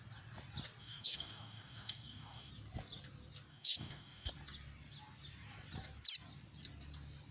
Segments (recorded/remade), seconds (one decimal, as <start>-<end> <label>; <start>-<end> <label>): 0.0-0.8 recorded; 0.8-2.5 remade; 2.5-3.5 recorded; 3.5-4.3 remade; 4.3-7.3 recorded